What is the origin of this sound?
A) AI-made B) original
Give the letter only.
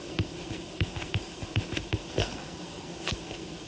A